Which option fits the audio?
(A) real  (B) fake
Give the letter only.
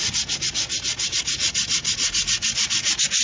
A